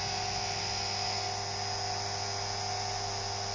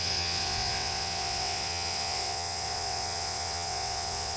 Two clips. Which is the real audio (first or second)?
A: first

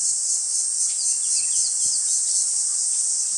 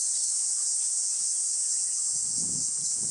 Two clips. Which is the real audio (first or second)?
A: first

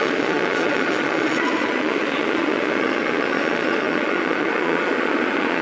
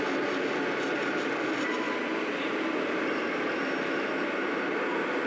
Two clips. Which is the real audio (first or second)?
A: second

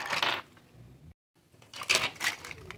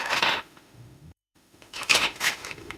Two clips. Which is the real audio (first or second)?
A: first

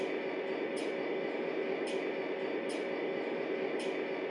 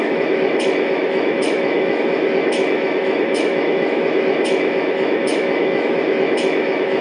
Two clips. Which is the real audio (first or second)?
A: first